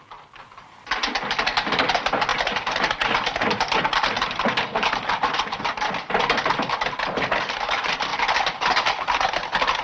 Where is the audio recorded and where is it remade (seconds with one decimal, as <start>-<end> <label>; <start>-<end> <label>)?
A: 0.0-2.3 recorded; 2.3-6.7 remade; 6.7-8.1 recorded; 8.1-8.7 remade; 8.7-9.8 recorded